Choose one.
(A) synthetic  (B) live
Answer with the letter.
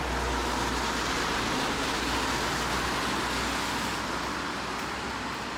B